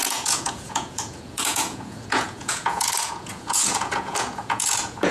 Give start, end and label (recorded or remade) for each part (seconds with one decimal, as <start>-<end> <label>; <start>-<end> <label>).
0.0-5.1 remade